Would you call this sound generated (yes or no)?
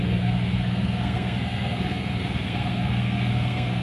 yes